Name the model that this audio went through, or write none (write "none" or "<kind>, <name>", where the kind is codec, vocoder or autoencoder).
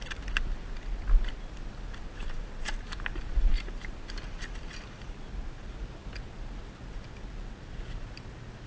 none